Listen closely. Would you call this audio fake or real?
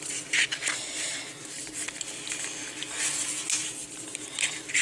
real